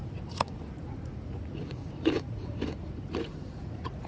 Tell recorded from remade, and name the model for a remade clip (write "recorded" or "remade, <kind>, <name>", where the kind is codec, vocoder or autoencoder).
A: remade, vocoder, Vocos